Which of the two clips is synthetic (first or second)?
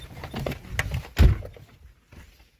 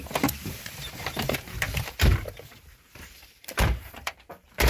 second